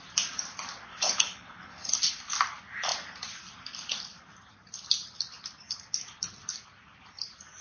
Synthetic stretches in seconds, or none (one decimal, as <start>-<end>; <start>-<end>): 0.9-1.9